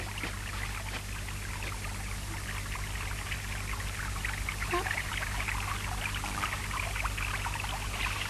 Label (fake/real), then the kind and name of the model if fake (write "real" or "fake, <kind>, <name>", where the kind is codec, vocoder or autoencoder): real